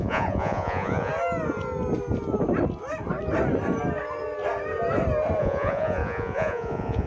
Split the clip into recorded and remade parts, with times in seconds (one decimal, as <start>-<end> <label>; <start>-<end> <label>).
0.0-1.1 remade; 1.1-5.4 recorded; 5.4-7.1 remade